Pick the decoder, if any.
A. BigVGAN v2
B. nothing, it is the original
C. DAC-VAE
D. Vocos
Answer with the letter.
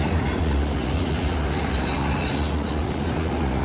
D